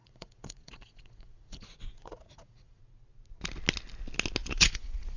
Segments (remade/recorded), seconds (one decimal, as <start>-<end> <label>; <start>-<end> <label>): 0.0-2.8 remade; 2.8-4.4 recorded; 4.4-5.2 remade